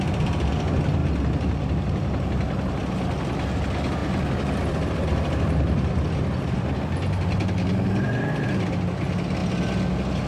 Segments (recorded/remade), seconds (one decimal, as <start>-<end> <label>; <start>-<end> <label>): 0.0-4.0 recorded; 4.0-6.6 remade; 6.6-10.3 recorded